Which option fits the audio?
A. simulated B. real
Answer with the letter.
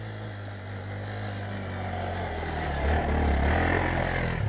B